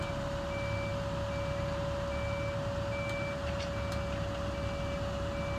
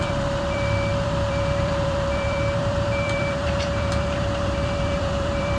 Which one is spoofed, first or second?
second